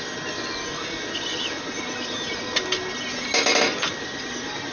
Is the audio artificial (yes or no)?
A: no